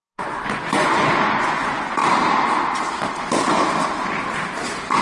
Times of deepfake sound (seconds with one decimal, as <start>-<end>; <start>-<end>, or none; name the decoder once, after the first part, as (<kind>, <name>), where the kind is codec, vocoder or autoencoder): 0.0-2.0 (vocoder, Vocos)